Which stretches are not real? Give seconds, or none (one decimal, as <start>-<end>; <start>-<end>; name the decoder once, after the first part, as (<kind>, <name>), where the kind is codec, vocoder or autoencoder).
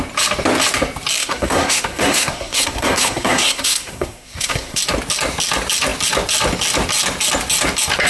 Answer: 1.2-4.8 (codec, SNAC)